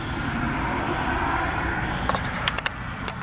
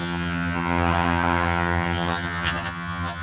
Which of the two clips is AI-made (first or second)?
second